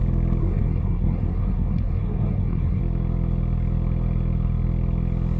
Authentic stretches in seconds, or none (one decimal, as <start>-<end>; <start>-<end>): 0.0-0.4; 2.8-5.4